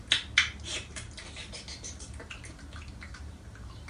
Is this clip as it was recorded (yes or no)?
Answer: yes